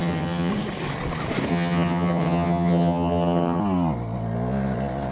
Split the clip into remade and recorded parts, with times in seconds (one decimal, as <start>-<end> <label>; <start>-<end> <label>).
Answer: 0.0-0.5 remade; 0.5-1.5 recorded; 1.5-3.6 remade; 3.6-5.1 recorded